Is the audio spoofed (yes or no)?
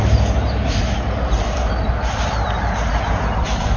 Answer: no